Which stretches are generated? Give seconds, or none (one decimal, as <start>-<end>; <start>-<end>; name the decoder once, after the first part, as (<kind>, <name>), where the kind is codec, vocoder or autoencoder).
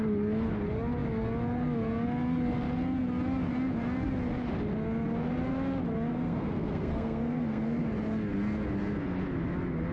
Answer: 6.1-7.8 (codec, SNAC)